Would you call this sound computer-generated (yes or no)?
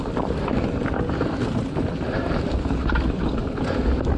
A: no